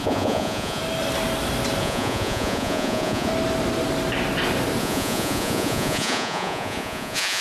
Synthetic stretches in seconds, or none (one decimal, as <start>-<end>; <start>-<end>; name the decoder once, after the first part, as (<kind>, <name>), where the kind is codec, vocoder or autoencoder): 0.0-0.8 (vocoder, Vocos); 1.8-3.3; 4.8-7.4